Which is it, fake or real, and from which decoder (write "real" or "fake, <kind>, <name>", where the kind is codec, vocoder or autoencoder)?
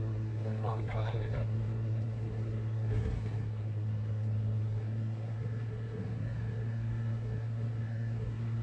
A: fake, codec, SNAC